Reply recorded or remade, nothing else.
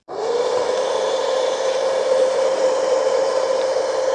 remade